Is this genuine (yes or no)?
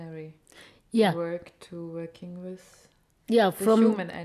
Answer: yes